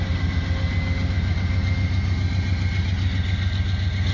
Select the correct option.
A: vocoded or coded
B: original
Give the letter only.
B